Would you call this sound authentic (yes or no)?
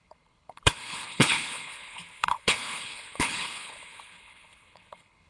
no